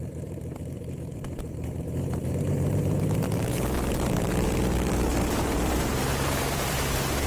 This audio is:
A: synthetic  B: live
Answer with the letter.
A